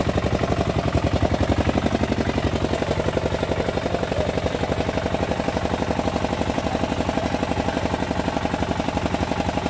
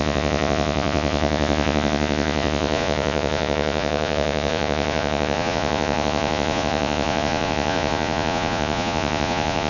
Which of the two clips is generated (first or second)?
second